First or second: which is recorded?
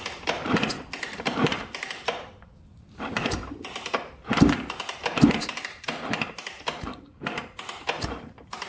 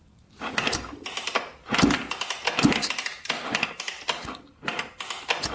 second